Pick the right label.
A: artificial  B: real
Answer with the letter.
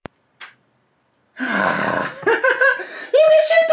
A